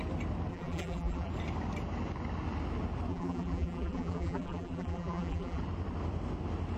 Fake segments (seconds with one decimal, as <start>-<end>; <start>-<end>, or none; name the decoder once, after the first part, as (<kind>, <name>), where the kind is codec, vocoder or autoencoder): 0.5-1.3 (vocoder, BigVGAN v2); 3.1-5.6